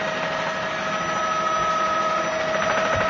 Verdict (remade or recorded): recorded